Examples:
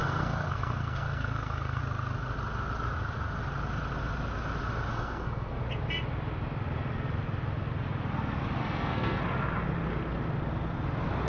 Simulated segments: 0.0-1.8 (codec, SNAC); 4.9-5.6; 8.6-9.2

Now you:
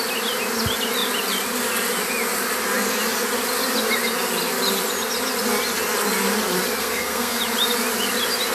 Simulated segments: 6.8-7.4 (codec, SNAC)

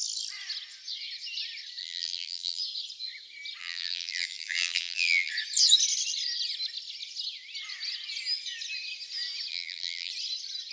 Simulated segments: 1.8-2.6 (vocoder, BigVGAN v2); 3.6-5.3; 9.5-10.1

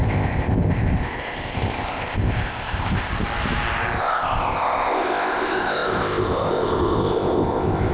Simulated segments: 0.0-3.1 (codec, ZipCodec); 4.0-7.9

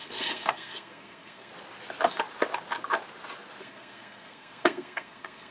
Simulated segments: 0.0-1.5 (codec, SNAC); 3.6-5.5

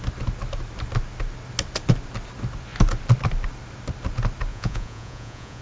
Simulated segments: 4.5-5.6 (vocoder, Vocos)

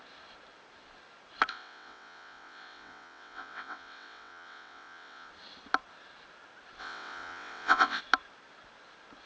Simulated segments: 1.5-5.3 (vocoder, WaveNeXt); 6.8-8.0

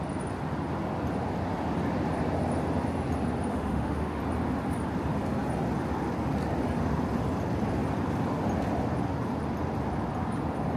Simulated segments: 3.5-4.2 (autoencoder, DAC-VAE)